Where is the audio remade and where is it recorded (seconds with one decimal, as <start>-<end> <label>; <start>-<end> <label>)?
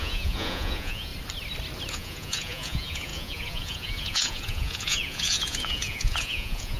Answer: 0.0-1.1 remade; 1.1-1.9 recorded; 1.9-6.8 remade